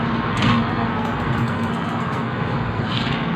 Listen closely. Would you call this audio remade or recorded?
remade